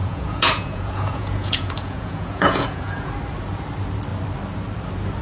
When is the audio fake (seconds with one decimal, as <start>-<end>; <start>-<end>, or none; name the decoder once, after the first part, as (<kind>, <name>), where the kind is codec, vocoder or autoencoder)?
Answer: 0.0-3.1 (vocoder, Vocos)